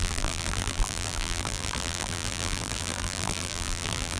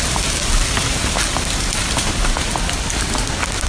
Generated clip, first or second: first